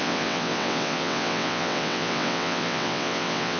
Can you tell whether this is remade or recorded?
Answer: remade